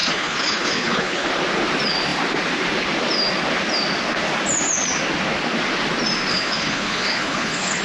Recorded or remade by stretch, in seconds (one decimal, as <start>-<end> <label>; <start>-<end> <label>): 0.0-1.3 remade; 1.3-6.3 recorded; 6.3-7.8 remade